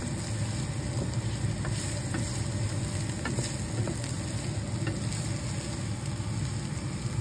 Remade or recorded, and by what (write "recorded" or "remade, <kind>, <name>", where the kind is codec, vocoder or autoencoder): recorded